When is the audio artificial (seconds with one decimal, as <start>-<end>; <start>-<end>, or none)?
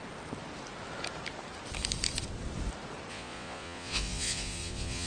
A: 3.1-5.1